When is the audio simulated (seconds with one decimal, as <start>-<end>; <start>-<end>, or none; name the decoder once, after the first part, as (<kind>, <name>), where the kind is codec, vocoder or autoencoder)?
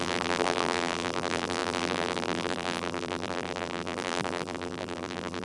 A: 0.0-5.4 (vocoder, BigVGAN v2)